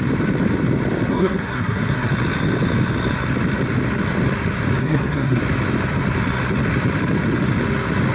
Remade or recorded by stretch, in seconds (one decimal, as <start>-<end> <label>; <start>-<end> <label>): 0.0-1.1 recorded; 1.1-2.1 remade; 2.1-4.8 recorded; 4.8-5.4 remade; 5.4-8.1 recorded